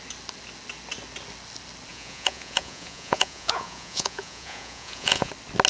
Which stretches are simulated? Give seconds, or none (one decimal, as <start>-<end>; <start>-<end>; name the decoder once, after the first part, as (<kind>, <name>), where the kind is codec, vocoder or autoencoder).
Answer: 1.9-5.3 (vocoder, Vocos)